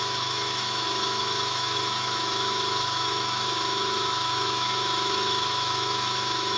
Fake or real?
fake